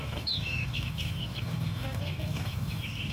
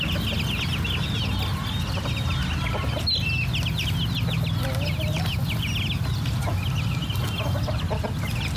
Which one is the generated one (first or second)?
first